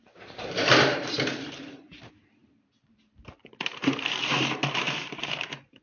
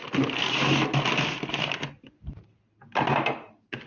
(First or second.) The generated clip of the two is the first